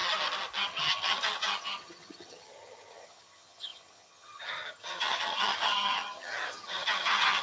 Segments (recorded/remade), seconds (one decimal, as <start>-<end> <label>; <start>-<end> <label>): 0.0-0.7 recorded; 0.7-7.4 remade